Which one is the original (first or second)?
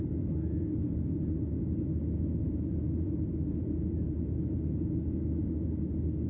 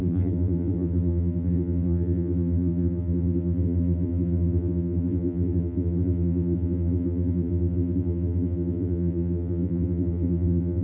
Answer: first